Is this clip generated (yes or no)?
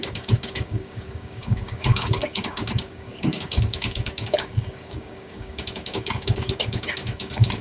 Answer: yes